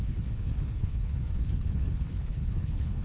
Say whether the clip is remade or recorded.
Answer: remade